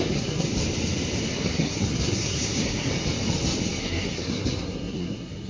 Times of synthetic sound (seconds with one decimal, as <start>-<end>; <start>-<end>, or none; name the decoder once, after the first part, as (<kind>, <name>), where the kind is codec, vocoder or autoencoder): 0.0-0.5 (codec, SNAC); 1.5-2.9; 3.8-5.5